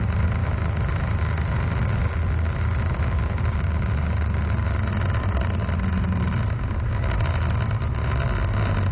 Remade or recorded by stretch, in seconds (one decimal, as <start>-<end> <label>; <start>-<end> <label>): 0.0-8.9 recorded